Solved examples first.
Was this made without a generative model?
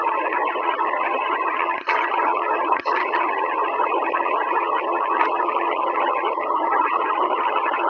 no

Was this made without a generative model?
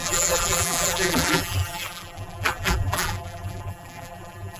no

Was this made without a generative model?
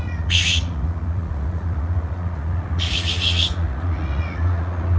no